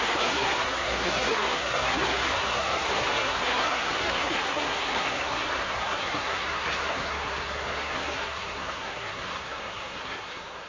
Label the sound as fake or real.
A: fake